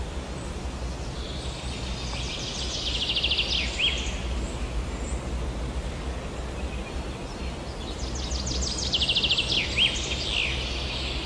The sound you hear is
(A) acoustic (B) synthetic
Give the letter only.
A